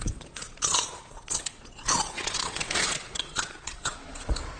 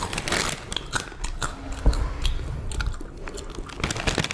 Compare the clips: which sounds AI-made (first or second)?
first